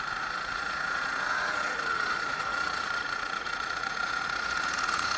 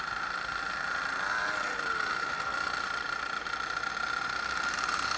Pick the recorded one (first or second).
second